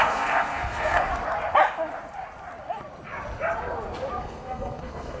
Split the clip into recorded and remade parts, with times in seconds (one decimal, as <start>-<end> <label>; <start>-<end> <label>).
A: 0.0-1.1 remade; 1.1-4.2 recorded; 4.2-5.2 remade